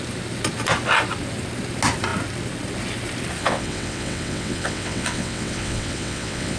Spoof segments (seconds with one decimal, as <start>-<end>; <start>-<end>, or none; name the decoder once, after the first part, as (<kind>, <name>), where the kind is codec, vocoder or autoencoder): 3.4-6.6 (vocoder, WaveNeXt)